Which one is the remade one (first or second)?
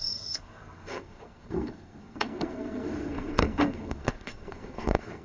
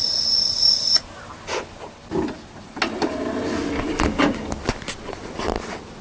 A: first